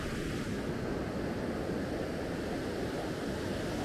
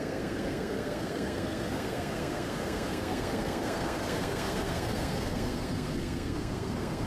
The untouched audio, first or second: first